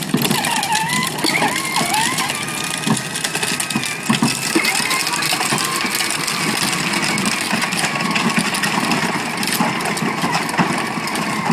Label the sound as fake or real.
real